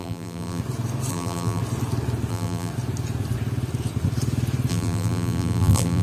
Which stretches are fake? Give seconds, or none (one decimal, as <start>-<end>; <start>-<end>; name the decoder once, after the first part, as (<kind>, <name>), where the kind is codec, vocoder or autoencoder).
0.0-0.6 (vocoder, BigVGAN v2); 1.1-1.6; 2.3-2.7; 4.7-6.0